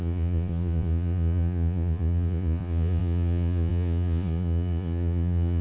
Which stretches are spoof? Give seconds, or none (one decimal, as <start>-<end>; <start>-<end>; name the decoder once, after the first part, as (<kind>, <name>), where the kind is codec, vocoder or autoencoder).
0.0-5.6 (vocoder, Vocos)